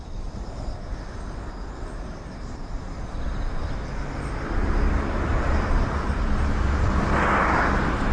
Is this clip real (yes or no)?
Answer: no